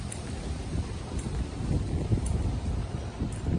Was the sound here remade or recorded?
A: recorded